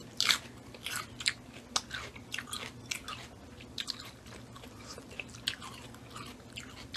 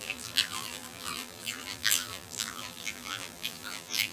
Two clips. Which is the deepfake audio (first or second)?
second